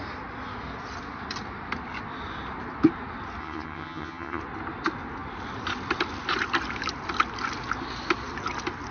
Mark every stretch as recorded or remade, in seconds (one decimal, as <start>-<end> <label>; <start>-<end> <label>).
0.0-3.4 recorded; 3.4-4.4 remade; 4.4-8.9 recorded